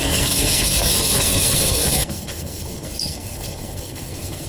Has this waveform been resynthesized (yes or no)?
yes